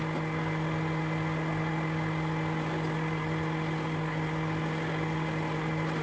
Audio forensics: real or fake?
real